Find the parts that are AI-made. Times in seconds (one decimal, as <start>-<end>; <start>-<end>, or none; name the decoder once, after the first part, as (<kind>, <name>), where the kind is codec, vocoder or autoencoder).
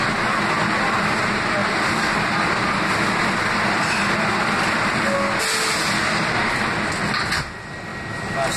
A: none